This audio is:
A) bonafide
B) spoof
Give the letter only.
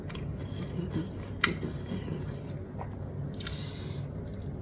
A